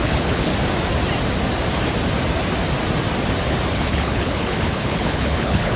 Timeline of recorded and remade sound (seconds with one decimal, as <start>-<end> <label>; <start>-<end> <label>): 0.0-0.5 remade; 0.5-3.7 recorded; 3.7-5.8 remade